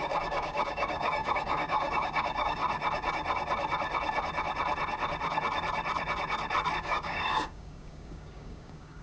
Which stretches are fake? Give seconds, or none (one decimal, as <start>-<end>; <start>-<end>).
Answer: 0.0-2.6; 6.8-9.0